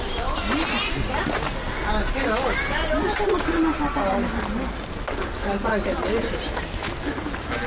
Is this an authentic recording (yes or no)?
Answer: yes